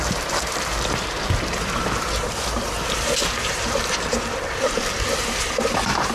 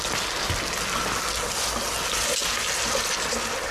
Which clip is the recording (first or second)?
second